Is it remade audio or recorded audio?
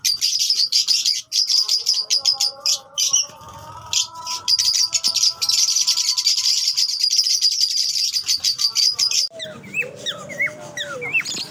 remade